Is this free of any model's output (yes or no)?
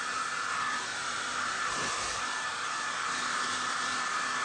yes